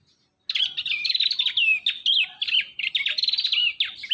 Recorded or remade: recorded